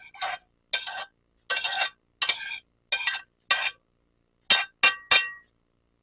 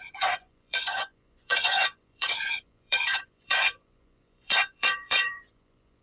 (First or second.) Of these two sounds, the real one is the first